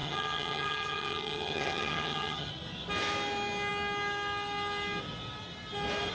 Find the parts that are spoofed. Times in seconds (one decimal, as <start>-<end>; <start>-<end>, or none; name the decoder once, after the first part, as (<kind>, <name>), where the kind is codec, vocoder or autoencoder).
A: 0.0-2.5 (vocoder, HiFi-GAN)

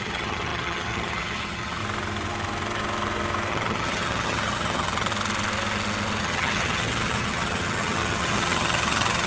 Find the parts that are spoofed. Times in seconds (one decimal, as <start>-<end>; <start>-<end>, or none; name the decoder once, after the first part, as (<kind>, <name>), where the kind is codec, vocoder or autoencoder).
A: 0.0-1.8 (vocoder, HiFi-GAN); 3.5-5.1; 6.2-9.3